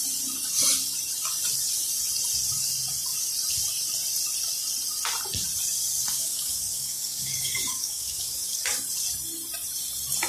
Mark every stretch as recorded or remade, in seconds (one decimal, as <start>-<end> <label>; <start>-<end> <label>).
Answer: 0.0-6.1 recorded; 6.1-8.6 remade; 8.6-10.3 recorded